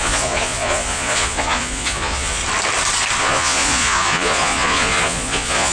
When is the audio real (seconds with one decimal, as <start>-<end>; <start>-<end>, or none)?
2.4-3.2